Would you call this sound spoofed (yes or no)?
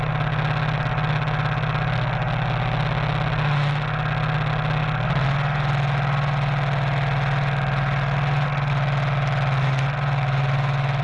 no